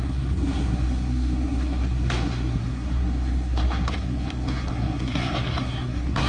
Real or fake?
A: fake